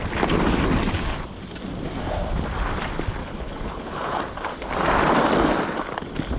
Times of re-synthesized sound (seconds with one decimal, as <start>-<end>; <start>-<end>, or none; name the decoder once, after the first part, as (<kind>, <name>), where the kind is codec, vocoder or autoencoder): 3.2-4.2 (codec, HILCodec)